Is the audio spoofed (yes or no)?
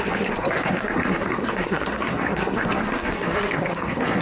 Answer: yes